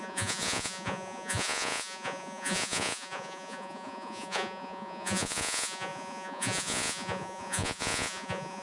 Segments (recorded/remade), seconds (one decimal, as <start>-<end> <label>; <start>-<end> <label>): 0.0-8.6 remade